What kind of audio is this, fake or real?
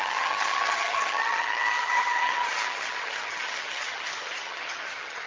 fake